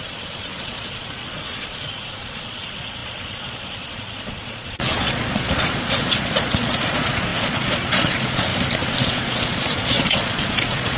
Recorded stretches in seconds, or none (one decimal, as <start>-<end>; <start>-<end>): 8.5-9.0